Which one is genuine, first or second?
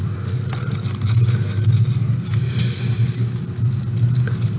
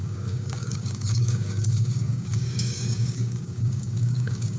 first